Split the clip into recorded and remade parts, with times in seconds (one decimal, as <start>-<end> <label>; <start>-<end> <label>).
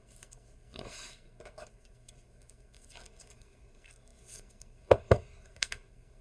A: 0.0-6.2 remade